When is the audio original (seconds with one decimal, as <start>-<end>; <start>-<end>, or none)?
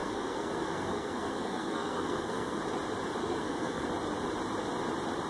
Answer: 2.6-3.2; 3.9-5.3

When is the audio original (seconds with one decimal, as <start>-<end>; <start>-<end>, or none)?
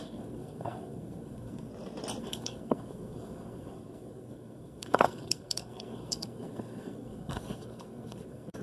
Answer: 1.7-2.2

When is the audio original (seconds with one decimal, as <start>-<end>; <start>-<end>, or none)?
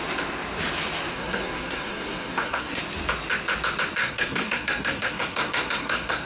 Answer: 0.0-1.1; 2.8-4.0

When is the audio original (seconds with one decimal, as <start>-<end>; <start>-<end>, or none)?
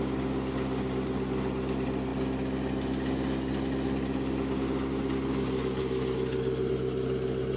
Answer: 0.0-7.6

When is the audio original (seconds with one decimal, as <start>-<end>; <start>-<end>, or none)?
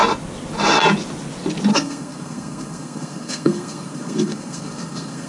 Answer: 0.0-1.7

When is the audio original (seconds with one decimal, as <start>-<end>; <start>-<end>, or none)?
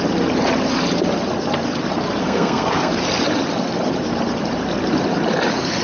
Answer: 0.0-2.2; 2.9-5.8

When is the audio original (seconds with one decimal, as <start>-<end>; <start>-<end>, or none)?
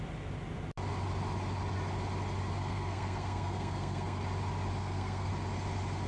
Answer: 0.0-2.6; 4.2-4.8; 5.3-6.1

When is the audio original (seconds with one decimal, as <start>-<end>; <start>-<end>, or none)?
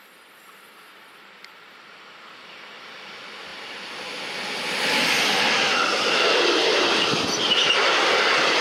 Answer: 0.0-8.6